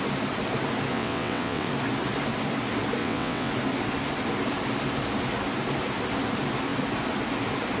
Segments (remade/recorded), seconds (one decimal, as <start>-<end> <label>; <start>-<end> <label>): 0.0-0.9 recorded; 0.9-1.7 remade; 1.7-3.0 recorded; 3.0-3.5 remade; 3.5-7.8 recorded